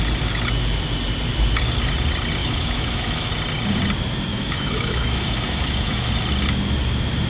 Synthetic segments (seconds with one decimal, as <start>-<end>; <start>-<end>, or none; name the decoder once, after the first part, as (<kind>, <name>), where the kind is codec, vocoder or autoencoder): 2.4-3.3 (autoencoder, DAC-VAE); 4.3-6.1